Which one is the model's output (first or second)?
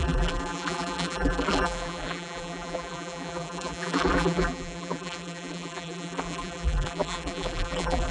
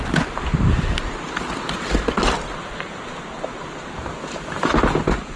first